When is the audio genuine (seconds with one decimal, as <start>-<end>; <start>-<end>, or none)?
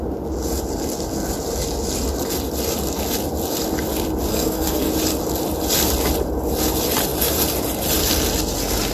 0.0-4.3; 4.9-8.9